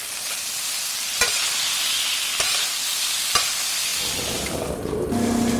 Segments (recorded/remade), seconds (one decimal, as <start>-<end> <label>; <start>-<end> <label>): 0.0-2.3 recorded; 2.3-3.1 remade; 3.1-5.6 recorded